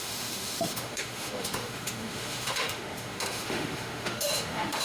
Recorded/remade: remade